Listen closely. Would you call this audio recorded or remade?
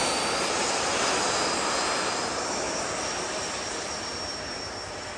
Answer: recorded